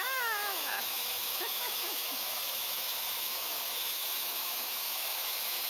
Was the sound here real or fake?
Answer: fake